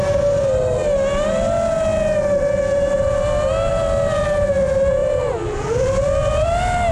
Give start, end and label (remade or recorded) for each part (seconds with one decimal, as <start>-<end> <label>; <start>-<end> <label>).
0.0-5.0 recorded; 5.0-5.8 remade; 5.8-6.9 recorded